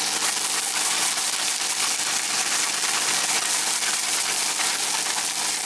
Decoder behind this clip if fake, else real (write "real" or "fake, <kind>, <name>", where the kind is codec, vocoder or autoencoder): real